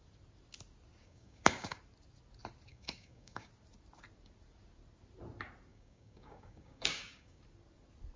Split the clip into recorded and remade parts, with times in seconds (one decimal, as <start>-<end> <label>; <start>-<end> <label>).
0.0-1.0 recorded; 1.0-1.8 remade; 1.8-2.7 recorded; 2.7-3.5 remade; 3.5-5.7 recorded; 5.7-7.4 remade; 7.4-8.2 recorded